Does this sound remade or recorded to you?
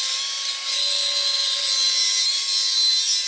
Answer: recorded